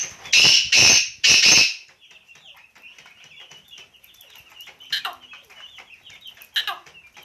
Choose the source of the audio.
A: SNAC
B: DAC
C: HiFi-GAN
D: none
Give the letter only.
D